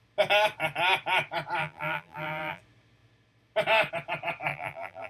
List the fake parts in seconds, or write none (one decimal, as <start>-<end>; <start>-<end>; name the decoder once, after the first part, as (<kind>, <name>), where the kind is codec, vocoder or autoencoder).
1.6-2.6 (vocoder, BigVGAN v2); 4.5-5.1